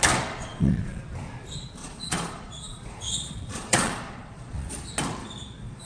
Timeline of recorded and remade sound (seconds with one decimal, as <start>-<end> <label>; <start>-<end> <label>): 0.0-0.4 recorded; 0.4-1.0 remade; 1.0-1.8 recorded; 1.8-4.7 remade; 4.7-5.2 recorded; 5.2-5.9 remade